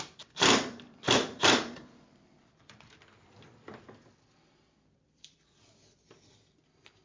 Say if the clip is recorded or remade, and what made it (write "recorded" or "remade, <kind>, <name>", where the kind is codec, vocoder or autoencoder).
remade, vocoder, BigVGAN v2